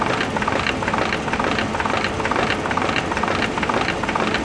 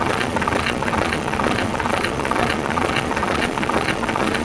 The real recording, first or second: first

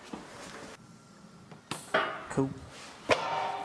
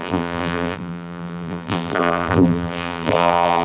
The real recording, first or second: first